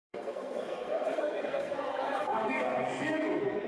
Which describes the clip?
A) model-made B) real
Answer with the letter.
A